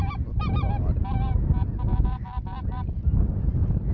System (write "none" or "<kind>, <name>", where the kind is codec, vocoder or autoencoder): none